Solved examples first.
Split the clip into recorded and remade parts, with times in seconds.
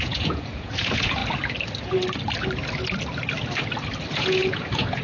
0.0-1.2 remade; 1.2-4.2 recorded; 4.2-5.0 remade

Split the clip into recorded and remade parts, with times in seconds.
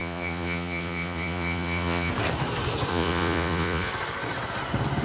0.0-2.1 remade; 2.1-2.9 recorded; 2.9-3.9 remade; 3.9-5.0 recorded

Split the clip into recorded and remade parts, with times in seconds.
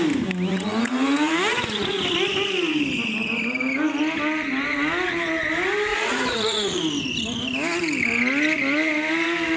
0.0-0.5 recorded; 0.5-1.9 remade; 1.9-5.9 recorded; 5.9-6.8 remade; 6.8-9.6 recorded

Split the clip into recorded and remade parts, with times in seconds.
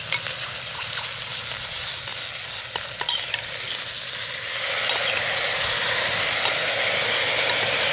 0.0-7.9 recorded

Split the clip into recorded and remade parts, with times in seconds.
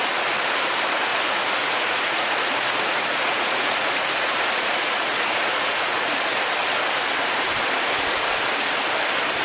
0.0-1.1 recorded; 1.1-6.2 remade; 6.2-9.4 recorded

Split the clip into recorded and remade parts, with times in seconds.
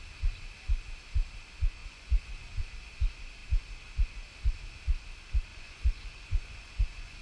0.0-1.8 recorded; 1.8-2.6 remade; 2.6-5.5 recorded; 5.5-7.2 remade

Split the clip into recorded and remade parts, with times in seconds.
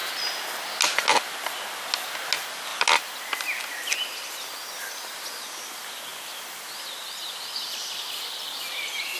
0.0-9.2 recorded